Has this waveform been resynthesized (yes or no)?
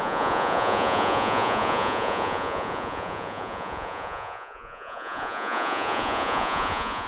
yes